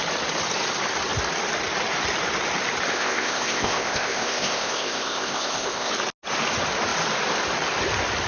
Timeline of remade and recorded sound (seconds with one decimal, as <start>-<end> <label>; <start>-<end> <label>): 0.0-2.9 recorded; 2.9-5.9 remade; 5.9-8.3 recorded